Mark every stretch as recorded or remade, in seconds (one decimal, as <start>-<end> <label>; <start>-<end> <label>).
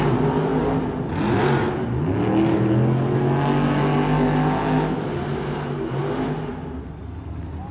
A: 0.0-7.7 recorded